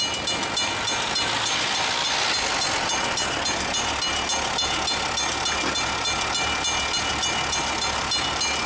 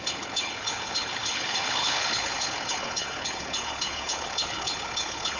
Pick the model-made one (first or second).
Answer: second